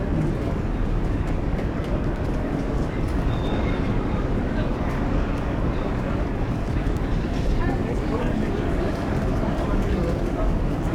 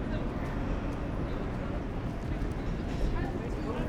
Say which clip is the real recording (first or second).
second